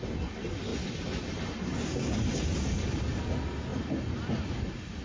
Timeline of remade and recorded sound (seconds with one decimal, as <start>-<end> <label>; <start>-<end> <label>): 0.0-5.0 recorded